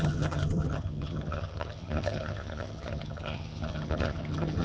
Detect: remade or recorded remade